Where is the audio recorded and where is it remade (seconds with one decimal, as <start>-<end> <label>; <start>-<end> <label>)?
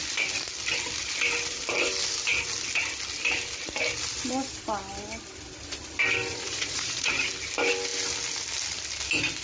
0.0-6.3 recorded; 6.3-7.3 remade; 7.3-9.4 recorded